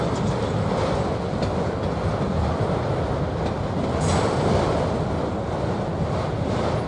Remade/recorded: recorded